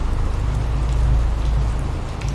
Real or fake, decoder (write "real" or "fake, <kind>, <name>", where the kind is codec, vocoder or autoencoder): real